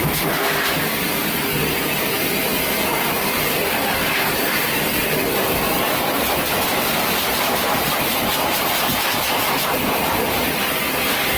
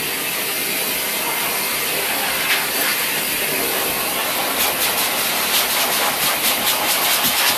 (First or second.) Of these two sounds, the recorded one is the second